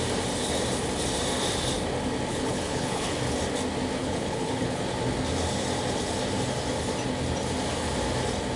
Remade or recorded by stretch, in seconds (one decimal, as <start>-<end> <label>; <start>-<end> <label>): 0.0-2.3 recorded; 2.3-3.2 remade; 3.2-4.0 recorded; 4.0-4.8 remade; 4.8-8.6 recorded